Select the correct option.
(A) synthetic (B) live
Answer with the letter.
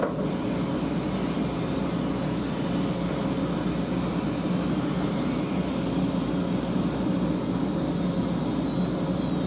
B